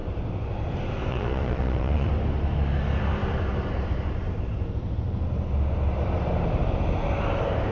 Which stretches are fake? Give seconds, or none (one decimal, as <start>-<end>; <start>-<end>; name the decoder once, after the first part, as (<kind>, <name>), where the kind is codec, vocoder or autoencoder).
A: 1.1-2.1 (vocoder, Vocos)